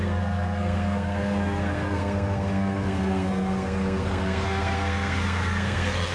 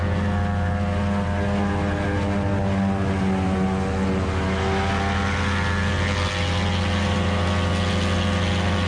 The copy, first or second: first